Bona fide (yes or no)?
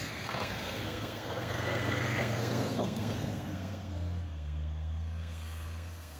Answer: no